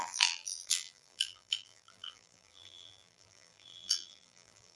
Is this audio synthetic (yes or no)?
yes